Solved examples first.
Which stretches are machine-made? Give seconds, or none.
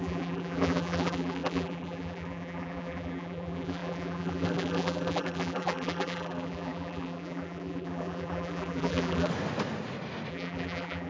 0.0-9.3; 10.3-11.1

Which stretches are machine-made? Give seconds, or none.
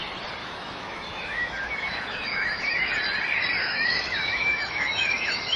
0.4-2.9; 3.6-5.6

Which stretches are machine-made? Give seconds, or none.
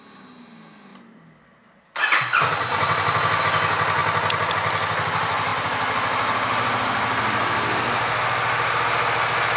none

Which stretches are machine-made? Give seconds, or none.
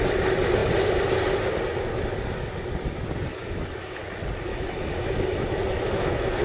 3.3-4.0; 4.5-6.4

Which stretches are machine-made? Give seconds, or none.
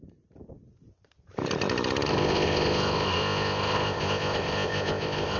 2.1-5.4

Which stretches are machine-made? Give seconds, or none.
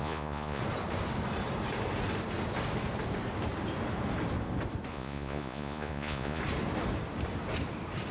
0.0-0.6; 4.9-6.4